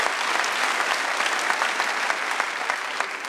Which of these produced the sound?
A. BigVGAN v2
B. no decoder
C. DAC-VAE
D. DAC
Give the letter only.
B